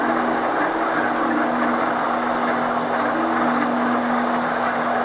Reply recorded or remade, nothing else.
recorded